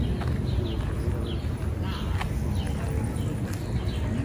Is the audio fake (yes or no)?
no